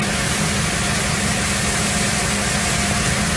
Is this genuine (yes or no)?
yes